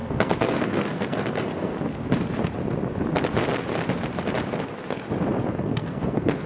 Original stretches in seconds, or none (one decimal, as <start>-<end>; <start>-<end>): 1.7-5.6